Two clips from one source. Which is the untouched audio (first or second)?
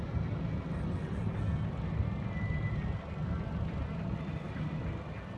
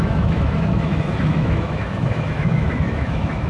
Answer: first